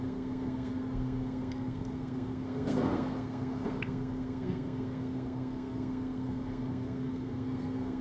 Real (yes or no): no